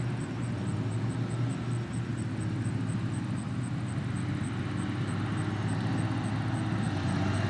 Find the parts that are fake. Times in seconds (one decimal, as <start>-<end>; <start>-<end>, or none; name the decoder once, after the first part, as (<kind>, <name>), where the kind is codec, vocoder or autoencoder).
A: none